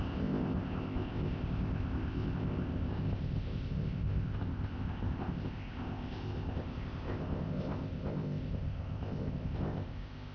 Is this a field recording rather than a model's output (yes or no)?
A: no